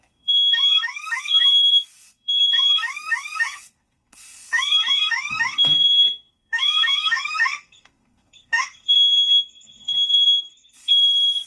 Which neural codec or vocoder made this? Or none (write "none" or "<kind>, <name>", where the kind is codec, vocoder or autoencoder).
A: codec, SNAC